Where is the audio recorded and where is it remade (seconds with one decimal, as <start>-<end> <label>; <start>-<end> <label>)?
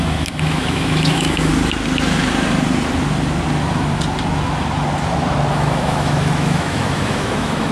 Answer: 0.0-1.5 remade; 1.5-5.5 recorded; 5.5-7.7 remade